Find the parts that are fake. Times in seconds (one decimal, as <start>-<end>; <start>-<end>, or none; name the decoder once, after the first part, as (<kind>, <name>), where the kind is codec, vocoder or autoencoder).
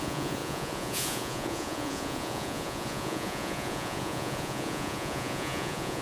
0.0-6.0 (vocoder, Vocos)